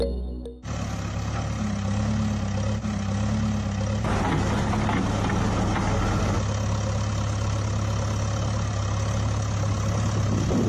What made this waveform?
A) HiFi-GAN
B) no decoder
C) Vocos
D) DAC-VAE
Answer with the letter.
B